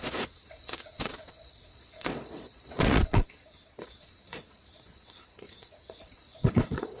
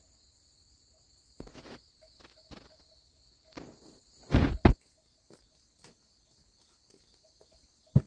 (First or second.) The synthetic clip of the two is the first